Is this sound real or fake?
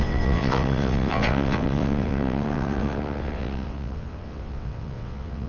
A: fake